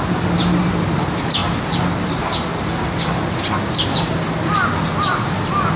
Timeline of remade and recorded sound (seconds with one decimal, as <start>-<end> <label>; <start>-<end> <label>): 0.0-5.8 recorded